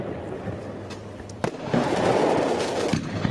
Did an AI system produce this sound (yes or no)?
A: yes